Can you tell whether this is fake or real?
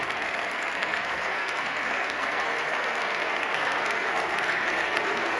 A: fake